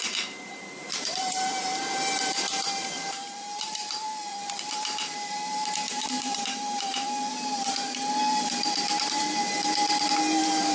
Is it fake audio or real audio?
fake